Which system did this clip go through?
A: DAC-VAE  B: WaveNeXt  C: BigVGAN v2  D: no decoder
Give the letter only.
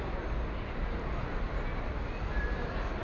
D